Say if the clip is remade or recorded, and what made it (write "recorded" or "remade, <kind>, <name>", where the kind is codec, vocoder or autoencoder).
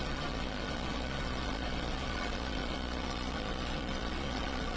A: remade, vocoder, Vocos